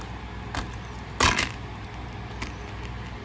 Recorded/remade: recorded